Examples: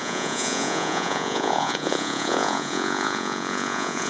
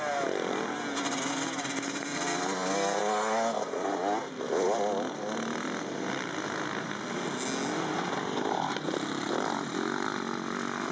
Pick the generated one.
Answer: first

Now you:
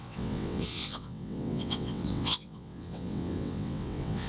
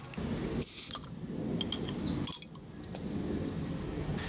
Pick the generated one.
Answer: first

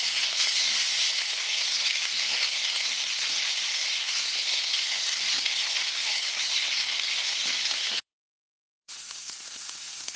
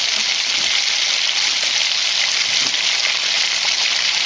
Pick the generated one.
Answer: first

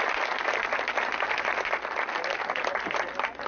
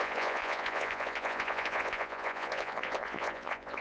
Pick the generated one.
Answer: second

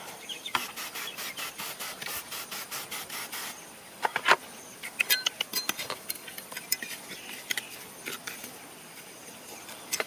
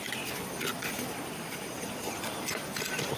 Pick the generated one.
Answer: second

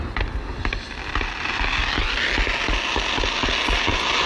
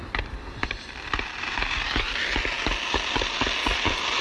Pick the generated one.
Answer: second